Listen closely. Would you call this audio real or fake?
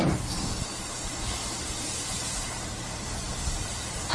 fake